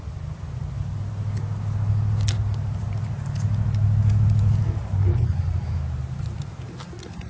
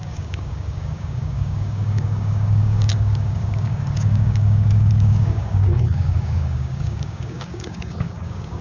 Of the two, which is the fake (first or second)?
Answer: second